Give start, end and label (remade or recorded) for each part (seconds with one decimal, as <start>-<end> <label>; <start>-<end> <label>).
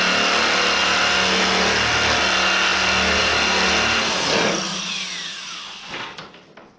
0.0-4.7 recorded; 4.7-5.6 remade; 5.6-6.8 recorded